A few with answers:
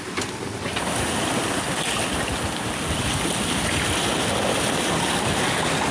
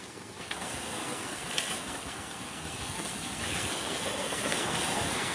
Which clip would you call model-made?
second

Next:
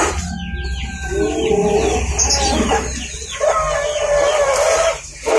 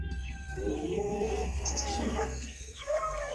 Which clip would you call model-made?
second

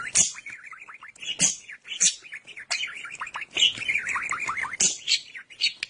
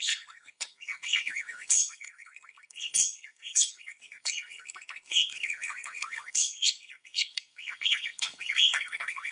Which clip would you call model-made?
second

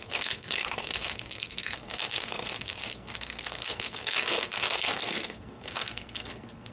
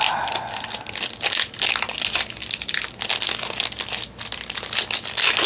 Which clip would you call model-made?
first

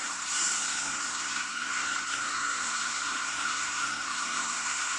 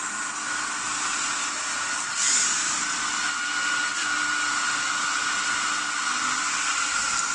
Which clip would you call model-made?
first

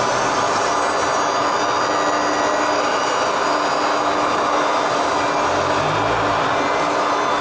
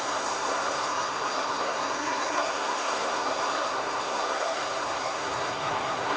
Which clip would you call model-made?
second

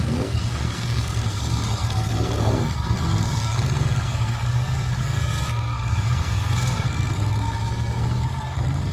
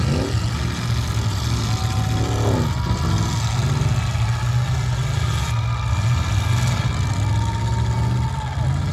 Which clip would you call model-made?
first